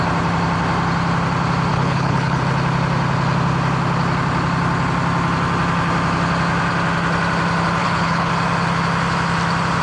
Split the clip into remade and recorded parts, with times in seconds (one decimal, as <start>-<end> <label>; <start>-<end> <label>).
0.0-1.7 recorded; 1.7-2.4 remade; 2.4-7.8 recorded; 7.8-8.3 remade; 8.3-9.8 recorded